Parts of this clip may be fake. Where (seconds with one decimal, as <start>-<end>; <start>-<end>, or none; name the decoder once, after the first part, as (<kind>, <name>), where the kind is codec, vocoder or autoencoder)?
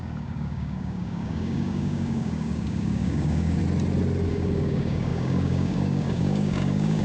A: 0.0-3.6 (codec, DAC); 4.3-7.0